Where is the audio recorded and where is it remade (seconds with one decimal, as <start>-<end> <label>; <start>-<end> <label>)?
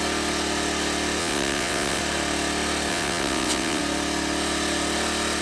0.0-1.2 recorded; 1.2-2.0 remade; 2.0-2.9 recorded; 2.9-3.8 remade; 3.8-5.4 recorded